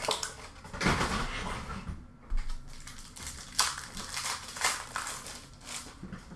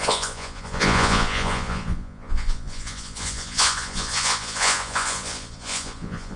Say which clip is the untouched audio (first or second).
first